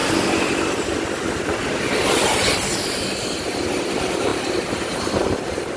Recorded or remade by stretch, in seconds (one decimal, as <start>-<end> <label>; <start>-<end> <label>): 0.0-5.8 recorded

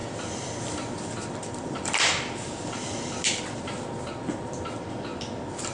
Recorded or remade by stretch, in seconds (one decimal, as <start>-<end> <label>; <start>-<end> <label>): 0.0-3.4 remade; 3.4-5.1 recorded; 5.1-5.7 remade

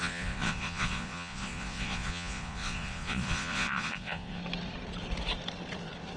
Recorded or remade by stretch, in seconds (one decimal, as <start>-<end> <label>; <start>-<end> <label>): 0.0-4.4 remade; 4.4-6.2 recorded

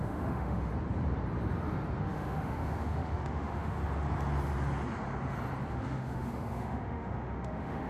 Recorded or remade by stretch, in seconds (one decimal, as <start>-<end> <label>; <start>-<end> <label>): 0.0-0.7 remade; 0.7-2.0 recorded; 2.0-3.8 remade; 3.8-5.7 recorded; 5.7-7.9 remade